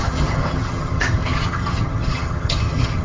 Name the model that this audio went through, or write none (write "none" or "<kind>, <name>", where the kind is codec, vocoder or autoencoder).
vocoder, HiFi-GAN